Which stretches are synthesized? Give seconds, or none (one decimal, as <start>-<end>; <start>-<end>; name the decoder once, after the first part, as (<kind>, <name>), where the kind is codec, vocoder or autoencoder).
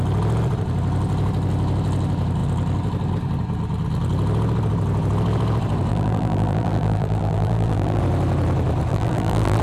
5.9-8.0 (vocoder, BigVGAN v2); 8.9-9.6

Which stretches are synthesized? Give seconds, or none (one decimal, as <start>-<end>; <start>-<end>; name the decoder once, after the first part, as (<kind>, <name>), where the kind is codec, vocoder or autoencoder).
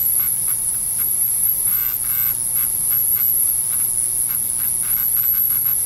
0.0-1.8 (vocoder, BigVGAN v2); 5.3-5.9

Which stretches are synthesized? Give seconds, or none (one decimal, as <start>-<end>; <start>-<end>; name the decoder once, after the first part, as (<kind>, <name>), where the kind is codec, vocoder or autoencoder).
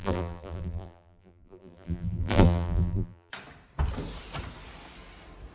0.0-3.3 (vocoder, BigVGAN v2)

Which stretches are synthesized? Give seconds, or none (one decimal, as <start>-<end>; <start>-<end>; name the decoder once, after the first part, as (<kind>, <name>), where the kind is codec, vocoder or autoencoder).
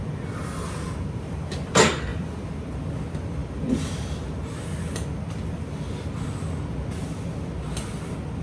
3.4-4.0 (vocoder, BigVGAN v2)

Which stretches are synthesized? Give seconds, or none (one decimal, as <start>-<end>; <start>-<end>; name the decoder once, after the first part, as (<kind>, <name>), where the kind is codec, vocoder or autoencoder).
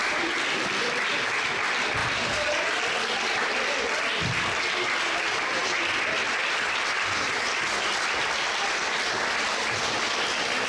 none